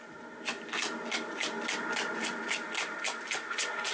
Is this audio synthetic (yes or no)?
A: no